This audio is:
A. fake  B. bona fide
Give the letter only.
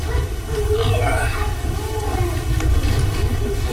B